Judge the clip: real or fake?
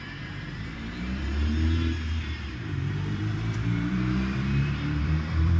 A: fake